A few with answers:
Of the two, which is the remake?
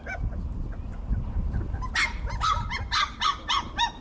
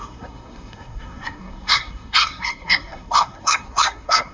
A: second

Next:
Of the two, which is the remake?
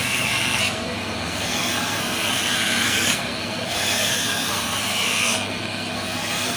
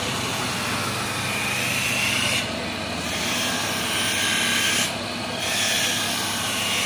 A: first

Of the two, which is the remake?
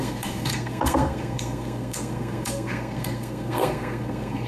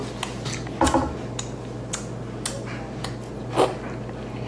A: first